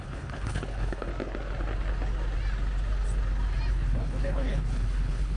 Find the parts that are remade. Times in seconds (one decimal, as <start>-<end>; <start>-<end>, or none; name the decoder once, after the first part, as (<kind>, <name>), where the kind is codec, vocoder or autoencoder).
0.0-1.1 (codec, HILCodec); 3.7-5.4